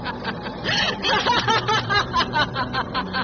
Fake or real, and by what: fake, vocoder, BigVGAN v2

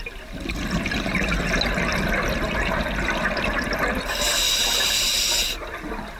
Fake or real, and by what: real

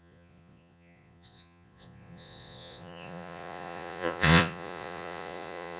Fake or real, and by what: fake, vocoder, Vocos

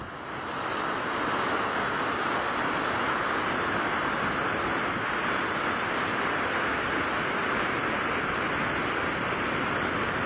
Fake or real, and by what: real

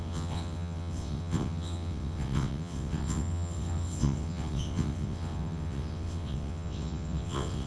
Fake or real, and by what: fake, vocoder, WaveNeXt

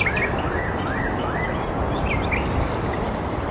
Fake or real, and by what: real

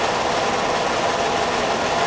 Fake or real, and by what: real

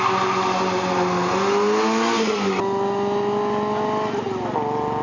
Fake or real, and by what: real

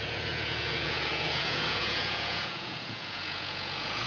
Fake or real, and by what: fake, vocoder, Vocos